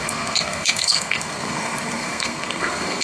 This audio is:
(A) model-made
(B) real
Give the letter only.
A